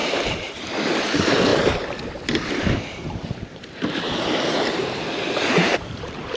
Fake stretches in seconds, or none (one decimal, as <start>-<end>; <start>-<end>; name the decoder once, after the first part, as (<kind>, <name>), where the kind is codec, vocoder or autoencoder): 0.0-1.5 (vocoder, BigVGAN v2); 3.5-6.4

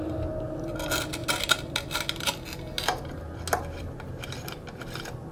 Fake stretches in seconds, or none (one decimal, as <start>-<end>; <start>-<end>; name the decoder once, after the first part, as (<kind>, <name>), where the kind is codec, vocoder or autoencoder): none

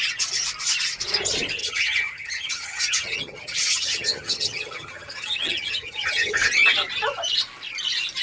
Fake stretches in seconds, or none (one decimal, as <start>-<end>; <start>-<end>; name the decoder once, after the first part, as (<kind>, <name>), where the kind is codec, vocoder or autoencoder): 1.6-6.5 (vocoder, HiFi-GAN)